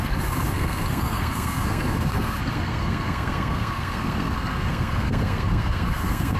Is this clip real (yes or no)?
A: no